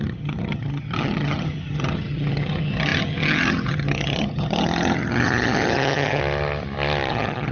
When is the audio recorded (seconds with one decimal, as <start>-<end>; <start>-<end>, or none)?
6.2-7.1